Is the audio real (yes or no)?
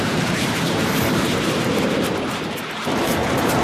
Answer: no